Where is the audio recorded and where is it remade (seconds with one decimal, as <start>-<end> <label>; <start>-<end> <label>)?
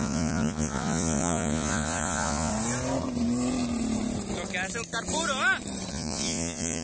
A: 0.0-2.5 remade; 2.5-5.9 recorded; 5.9-6.8 remade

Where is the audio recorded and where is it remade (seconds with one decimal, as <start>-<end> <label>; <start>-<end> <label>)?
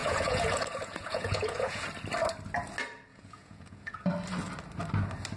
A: 0.0-1.8 remade; 1.8-3.1 recorded; 3.1-4.1 remade; 4.1-5.4 recorded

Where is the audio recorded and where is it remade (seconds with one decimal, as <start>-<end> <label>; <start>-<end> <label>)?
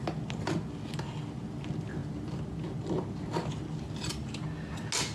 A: 0.0-5.1 recorded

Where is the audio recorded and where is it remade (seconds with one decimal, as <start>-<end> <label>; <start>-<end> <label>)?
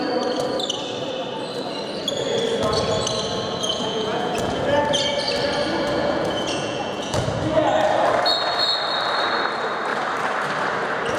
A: 0.0-3.7 recorded; 3.7-4.6 remade; 4.6-6.0 recorded; 6.0-7.2 remade; 7.2-11.2 recorded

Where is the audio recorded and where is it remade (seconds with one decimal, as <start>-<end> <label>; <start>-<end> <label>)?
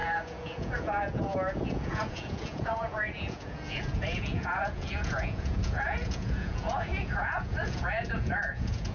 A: 0.0-8.9 remade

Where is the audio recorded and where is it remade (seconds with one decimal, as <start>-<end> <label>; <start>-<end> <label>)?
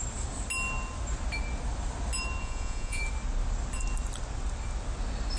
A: 0.0-2.4 recorded; 2.4-3.0 remade; 3.0-5.4 recorded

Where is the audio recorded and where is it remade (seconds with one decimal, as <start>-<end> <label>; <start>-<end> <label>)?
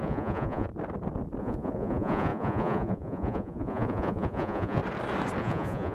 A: 0.0-0.7 remade; 0.7-1.4 recorded; 1.4-4.8 remade; 4.8-5.4 recorded; 5.4-5.9 remade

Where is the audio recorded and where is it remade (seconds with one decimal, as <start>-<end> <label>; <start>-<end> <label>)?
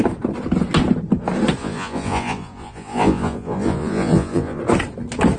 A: 0.0-1.6 recorded; 1.6-4.6 remade; 4.6-5.4 recorded